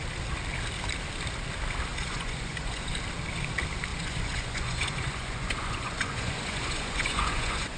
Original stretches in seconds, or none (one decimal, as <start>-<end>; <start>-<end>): 0.0-1.9; 2.9-3.9